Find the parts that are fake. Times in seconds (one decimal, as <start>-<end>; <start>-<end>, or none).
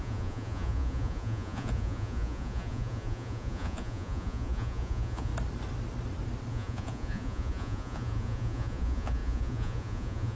0.0-5.3; 6.5-10.4